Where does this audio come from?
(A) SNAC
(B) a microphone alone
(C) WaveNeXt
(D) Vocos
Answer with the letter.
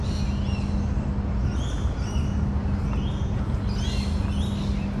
B